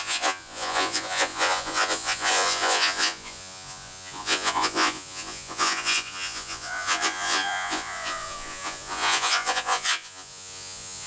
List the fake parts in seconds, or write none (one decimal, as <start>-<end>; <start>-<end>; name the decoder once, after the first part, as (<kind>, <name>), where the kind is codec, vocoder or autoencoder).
0.0-11.1 (vocoder, Vocos)